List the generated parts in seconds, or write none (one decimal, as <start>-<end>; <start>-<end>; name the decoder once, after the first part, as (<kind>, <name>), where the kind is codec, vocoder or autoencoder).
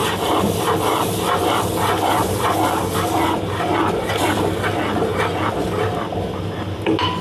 none